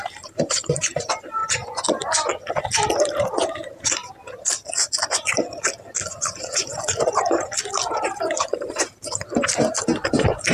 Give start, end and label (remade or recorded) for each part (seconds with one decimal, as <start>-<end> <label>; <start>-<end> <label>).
0.0-1.4 remade; 1.4-3.0 recorded; 3.0-4.0 remade; 4.0-6.2 recorded; 6.2-10.5 remade